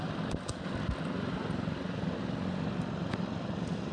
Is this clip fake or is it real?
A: real